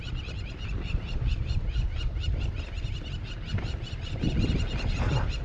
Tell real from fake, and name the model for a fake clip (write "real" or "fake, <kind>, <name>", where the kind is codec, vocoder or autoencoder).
real